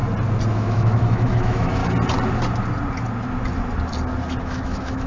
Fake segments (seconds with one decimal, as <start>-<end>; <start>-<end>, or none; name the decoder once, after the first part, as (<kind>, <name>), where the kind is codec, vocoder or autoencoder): 0.5-1.8 (autoencoder, DAC-VAE); 4.4-5.1